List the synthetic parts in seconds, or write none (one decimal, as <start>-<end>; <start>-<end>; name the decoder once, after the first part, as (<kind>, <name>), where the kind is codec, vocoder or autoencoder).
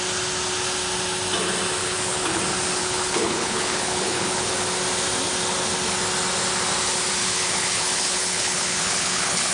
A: 1.8-2.4 (codec, HILCodec); 2.8-4.5; 7.2-9.5